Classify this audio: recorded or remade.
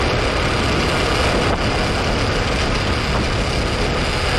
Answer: recorded